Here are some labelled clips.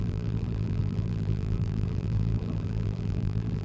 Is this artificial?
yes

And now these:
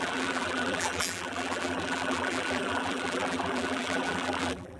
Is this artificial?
yes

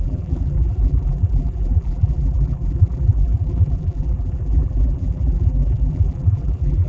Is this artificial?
yes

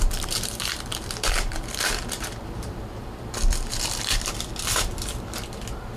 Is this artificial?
yes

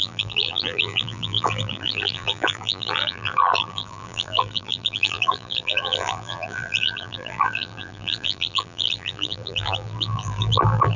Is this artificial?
yes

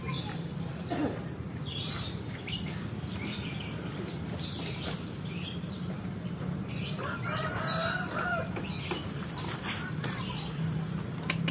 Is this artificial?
yes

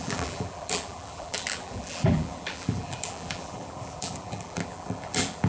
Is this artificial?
yes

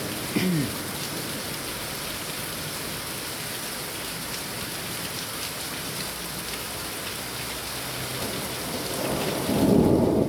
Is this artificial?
no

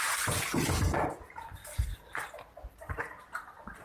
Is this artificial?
no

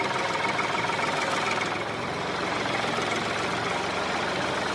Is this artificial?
no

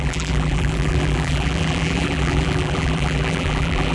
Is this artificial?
yes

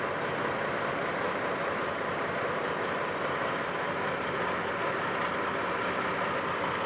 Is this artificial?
no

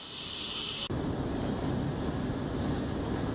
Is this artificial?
no